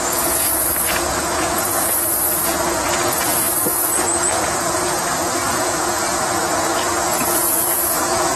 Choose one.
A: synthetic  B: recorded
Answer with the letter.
A